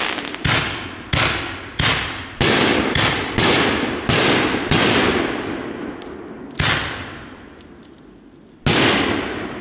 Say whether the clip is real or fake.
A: real